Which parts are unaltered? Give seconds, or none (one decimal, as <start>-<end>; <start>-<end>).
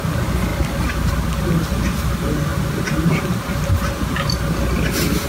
0.0-5.3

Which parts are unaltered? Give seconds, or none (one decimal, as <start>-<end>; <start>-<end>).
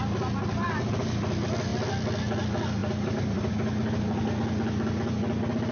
0.0-2.8; 3.5-5.7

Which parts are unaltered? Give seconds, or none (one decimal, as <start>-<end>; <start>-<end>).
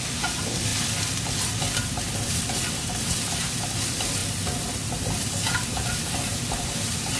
0.7-2.3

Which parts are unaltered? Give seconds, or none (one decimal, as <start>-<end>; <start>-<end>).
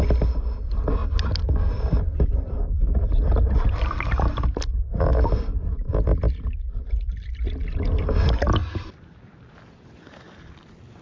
1.0-1.7; 8.6-11.0